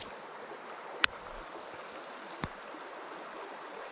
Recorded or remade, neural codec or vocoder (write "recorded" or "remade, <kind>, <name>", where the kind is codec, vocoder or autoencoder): recorded